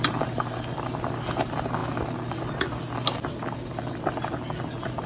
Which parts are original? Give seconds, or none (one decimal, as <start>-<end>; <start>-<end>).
0.0-5.1